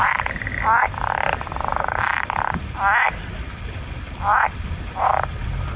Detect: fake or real fake